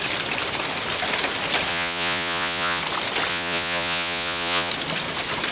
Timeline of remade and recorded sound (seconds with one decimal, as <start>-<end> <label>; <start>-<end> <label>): 0.0-1.7 recorded; 1.7-2.8 remade; 2.8-3.3 recorded; 3.3-4.7 remade; 4.7-5.5 recorded